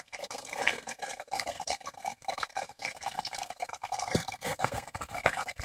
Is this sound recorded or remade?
remade